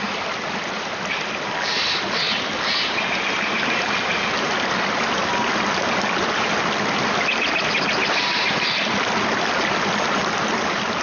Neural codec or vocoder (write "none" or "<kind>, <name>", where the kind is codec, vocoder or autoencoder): none